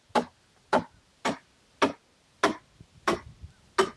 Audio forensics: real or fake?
real